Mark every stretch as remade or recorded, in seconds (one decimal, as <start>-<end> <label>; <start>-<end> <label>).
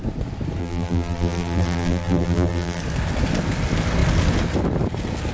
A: 0.0-0.6 recorded; 0.6-2.8 remade; 2.8-5.3 recorded